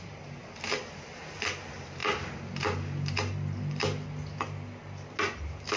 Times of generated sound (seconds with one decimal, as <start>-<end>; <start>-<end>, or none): none